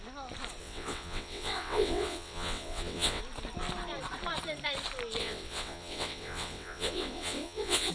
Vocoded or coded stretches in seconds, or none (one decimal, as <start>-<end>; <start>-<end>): 0.6-3.2; 5.2-7.9